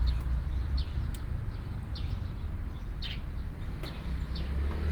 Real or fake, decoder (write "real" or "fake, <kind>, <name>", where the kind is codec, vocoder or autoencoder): real